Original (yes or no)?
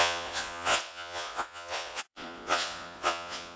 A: no